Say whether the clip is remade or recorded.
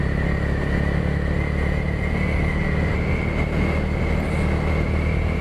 recorded